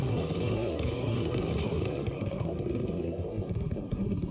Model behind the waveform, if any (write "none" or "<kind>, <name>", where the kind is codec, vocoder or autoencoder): codec, SNAC